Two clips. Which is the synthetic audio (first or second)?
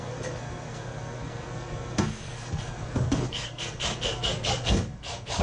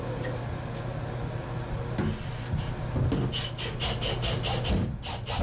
first